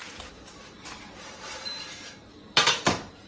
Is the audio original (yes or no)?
no